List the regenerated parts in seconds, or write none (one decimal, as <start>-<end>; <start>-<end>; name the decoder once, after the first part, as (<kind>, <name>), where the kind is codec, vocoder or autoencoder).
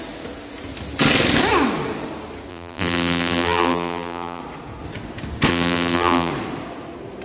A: 2.5-4.4 (vocoder, BigVGAN v2); 5.5-6.3